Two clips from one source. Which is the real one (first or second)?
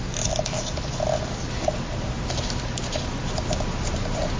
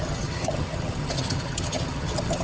first